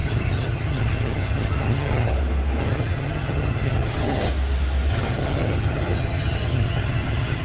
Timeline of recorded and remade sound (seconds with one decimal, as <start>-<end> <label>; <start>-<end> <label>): 0.0-2.1 remade; 2.1-2.6 recorded; 2.6-4.3 remade; 4.3-4.9 recorded; 4.9-7.4 remade